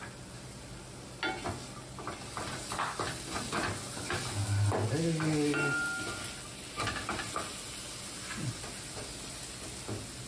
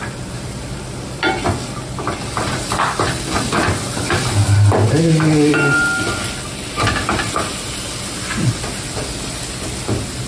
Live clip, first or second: first